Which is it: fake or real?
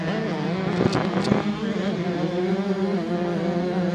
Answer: real